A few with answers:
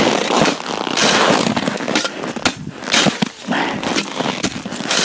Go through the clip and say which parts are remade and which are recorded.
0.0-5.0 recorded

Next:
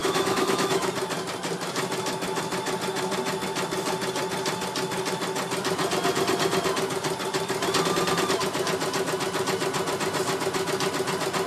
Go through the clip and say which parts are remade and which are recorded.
0.0-0.9 remade; 0.9-11.5 recorded

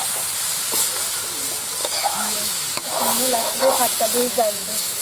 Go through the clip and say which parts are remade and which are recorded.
0.0-1.8 recorded; 1.8-3.6 remade; 3.6-4.2 recorded; 4.2-5.0 remade

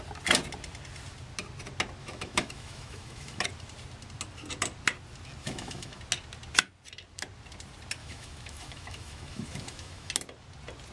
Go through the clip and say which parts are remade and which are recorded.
0.0-2.0 recorded; 2.0-3.4 remade; 3.4-5.4 recorded; 5.4-6.0 remade; 6.0-8.0 recorded; 8.0-10.1 remade; 10.1-10.9 recorded

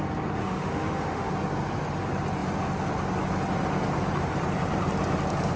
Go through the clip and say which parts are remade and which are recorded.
0.0-0.4 recorded; 0.4-1.3 remade; 1.3-5.6 recorded

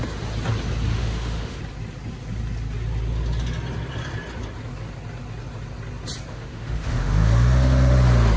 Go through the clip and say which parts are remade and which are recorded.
0.0-0.9 recorded; 0.9-1.6 remade; 1.6-6.3 recorded; 6.3-7.9 remade; 7.9-8.4 recorded

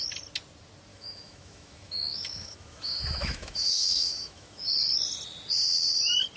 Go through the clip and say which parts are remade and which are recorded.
0.0-0.9 recorded; 0.9-4.7 remade; 4.7-6.4 recorded